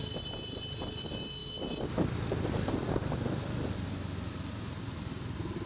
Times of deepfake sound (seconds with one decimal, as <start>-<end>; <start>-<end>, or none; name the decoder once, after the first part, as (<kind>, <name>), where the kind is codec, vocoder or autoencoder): none